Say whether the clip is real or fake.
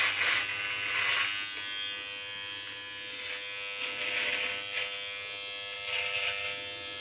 real